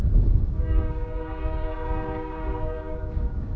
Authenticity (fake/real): fake